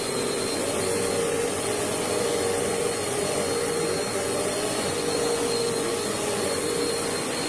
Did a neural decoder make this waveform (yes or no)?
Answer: yes